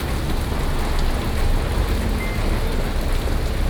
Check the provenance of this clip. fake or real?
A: real